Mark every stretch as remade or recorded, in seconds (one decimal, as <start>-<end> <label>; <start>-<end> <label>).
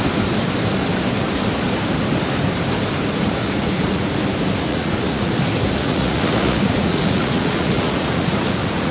0.0-3.4 recorded; 3.4-4.1 remade; 4.1-4.7 recorded; 4.7-5.3 remade; 5.3-5.8 recorded; 5.8-8.9 remade